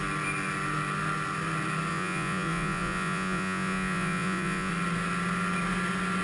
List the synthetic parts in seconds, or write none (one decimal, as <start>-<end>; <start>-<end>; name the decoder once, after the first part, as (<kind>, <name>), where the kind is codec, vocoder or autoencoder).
1.9-4.7 (vocoder, Vocos)